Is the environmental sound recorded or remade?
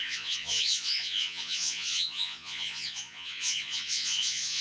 remade